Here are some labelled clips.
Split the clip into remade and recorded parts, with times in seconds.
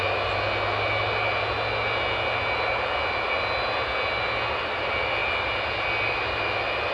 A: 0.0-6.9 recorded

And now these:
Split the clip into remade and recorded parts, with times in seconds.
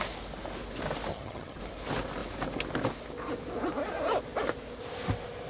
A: 0.0-1.1 recorded; 1.1-1.6 remade; 1.6-5.5 recorded